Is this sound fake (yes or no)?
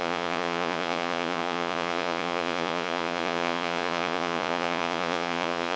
yes